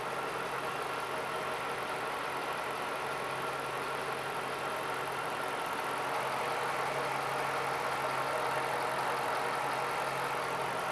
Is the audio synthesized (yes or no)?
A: no